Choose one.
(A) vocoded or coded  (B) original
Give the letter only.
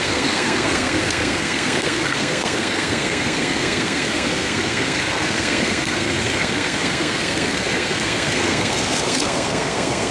A